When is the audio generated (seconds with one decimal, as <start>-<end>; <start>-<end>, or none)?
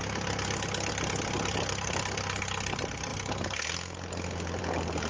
none